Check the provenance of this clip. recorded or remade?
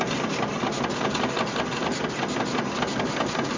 recorded